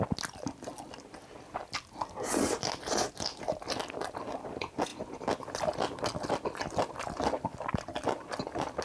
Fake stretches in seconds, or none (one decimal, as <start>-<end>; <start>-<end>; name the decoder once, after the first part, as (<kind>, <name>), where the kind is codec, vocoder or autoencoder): none